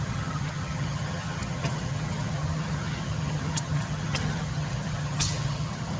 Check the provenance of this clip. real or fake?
fake